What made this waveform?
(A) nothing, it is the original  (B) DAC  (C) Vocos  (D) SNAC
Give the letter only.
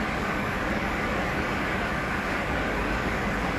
B